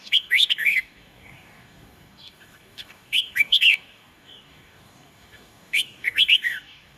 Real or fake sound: fake